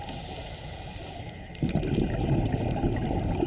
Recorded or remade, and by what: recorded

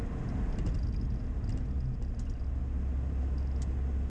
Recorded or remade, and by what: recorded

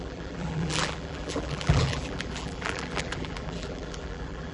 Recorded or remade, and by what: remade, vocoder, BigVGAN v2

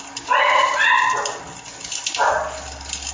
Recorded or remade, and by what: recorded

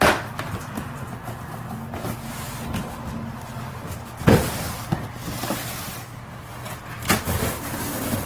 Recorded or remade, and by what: recorded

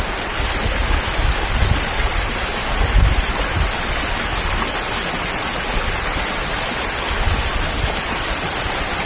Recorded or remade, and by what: recorded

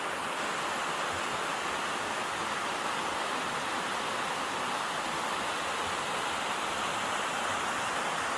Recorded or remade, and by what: recorded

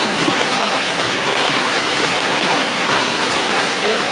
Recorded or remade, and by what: remade, codec, SNAC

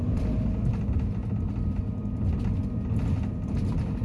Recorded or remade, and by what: recorded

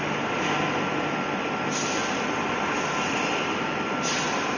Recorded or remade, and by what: recorded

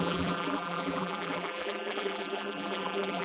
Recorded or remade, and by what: remade, vocoder, BigVGAN v2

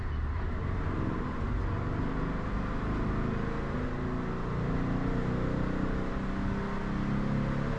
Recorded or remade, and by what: recorded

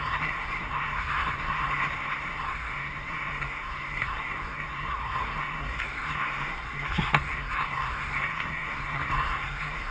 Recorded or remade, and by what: remade, codec, SNAC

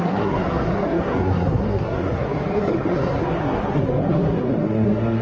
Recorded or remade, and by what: remade, codec, SNAC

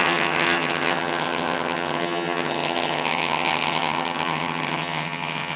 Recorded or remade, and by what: remade, vocoder, HiFi-GAN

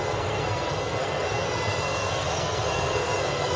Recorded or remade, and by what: remade, codec, SNAC